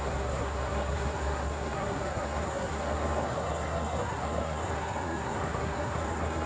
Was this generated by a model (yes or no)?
yes